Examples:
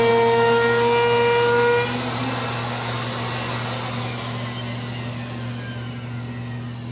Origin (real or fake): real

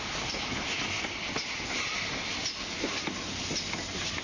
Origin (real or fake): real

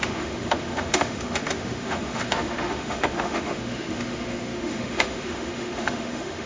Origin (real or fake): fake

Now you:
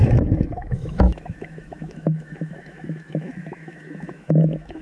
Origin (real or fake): fake